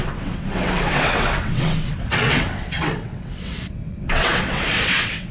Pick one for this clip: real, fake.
fake